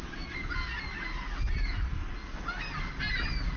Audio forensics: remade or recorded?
recorded